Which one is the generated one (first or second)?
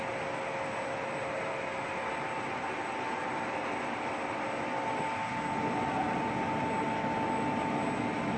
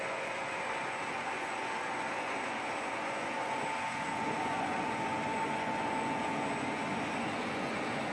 second